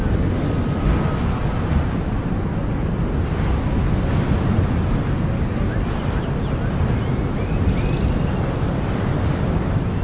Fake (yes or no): no